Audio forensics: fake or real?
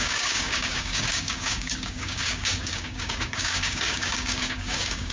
fake